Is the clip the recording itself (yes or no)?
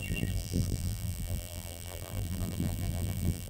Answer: no